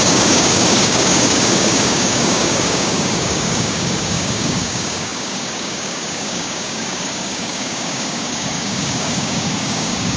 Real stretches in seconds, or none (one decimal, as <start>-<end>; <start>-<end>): none